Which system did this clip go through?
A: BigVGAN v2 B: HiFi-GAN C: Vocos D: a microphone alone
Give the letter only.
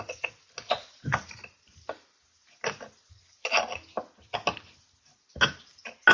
D